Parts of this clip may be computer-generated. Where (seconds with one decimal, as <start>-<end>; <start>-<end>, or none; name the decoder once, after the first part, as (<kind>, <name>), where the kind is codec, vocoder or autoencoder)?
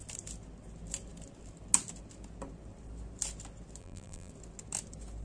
3.8-4.3 (vocoder, BigVGAN v2)